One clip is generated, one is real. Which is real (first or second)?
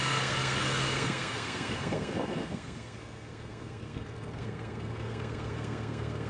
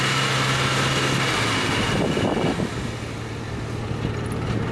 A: second